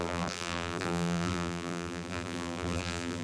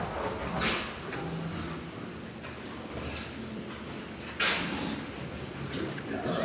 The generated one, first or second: first